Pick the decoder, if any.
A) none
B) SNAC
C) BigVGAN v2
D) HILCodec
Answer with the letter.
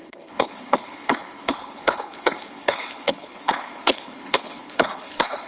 D